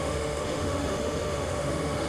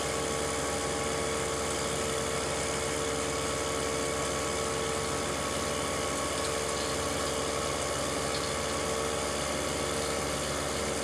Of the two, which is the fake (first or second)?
first